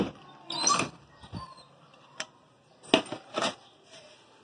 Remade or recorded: recorded